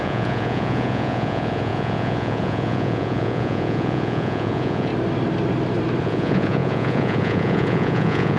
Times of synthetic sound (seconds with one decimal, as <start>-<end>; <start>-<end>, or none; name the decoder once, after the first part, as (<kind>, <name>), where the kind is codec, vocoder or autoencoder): 0.0-4.9 (vocoder, Vocos); 6.0-8.4